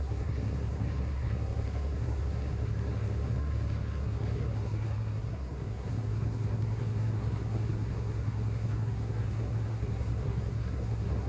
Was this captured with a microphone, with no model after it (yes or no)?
no